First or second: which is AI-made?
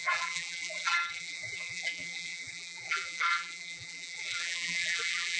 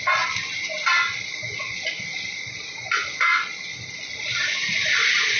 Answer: first